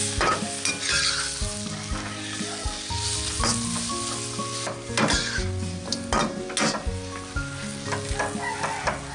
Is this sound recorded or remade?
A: recorded